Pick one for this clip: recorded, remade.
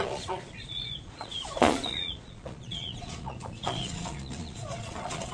remade